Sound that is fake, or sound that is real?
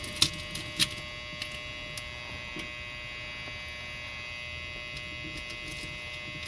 real